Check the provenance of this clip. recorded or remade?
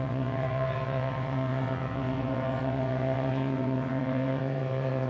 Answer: remade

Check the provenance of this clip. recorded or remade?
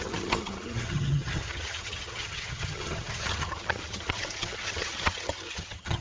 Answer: remade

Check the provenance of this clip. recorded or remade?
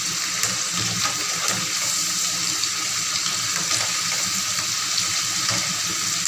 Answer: recorded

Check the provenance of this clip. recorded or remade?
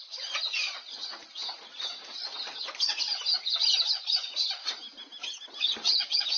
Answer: recorded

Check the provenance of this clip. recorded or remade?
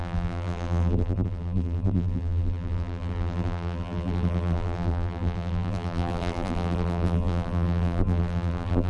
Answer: remade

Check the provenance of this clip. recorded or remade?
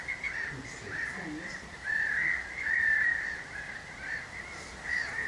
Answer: recorded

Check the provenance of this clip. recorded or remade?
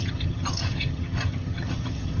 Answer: remade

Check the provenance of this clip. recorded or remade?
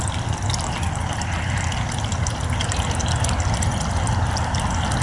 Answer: recorded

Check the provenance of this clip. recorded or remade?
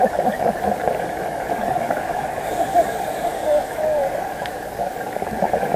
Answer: remade